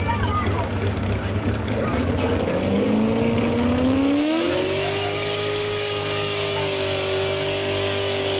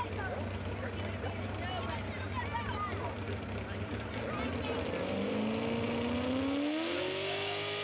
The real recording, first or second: second